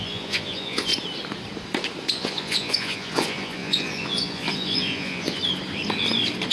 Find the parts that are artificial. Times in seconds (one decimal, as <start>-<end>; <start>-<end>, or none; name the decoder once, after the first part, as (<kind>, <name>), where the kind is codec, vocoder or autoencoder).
0.0-0.9 (vocoder, Vocos); 2.1-5.4